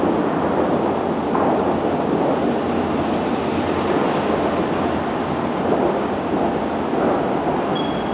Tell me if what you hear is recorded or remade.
recorded